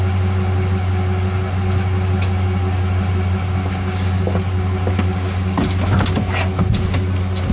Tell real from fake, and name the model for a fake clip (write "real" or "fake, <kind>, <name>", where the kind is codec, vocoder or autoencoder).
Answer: real